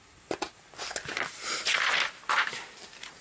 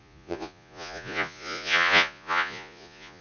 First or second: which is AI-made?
second